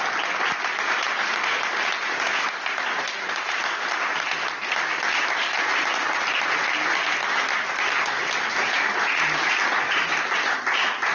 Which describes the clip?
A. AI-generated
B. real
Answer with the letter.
B